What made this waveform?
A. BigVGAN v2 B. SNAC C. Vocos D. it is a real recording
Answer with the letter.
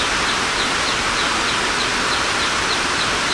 D